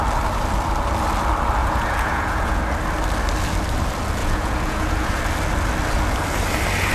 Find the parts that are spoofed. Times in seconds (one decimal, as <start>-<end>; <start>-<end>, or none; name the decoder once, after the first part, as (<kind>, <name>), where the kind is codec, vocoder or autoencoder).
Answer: 1.6-2.6 (vocoder, Vocos); 4.2-5.2